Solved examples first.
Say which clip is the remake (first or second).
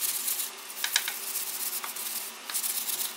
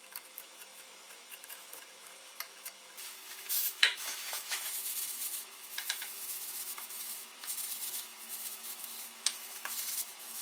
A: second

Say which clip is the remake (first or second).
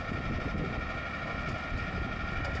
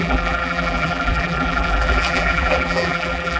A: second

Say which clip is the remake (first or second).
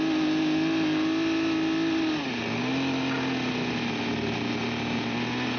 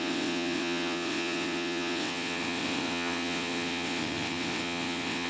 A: second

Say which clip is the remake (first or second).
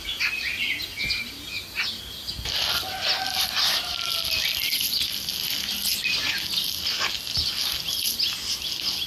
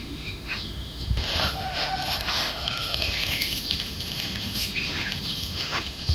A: second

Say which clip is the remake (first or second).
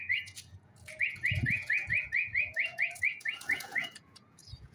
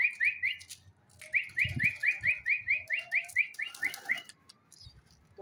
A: first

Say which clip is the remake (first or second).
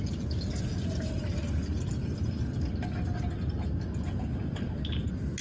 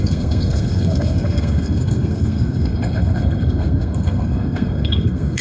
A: second